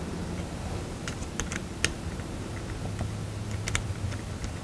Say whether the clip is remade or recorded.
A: recorded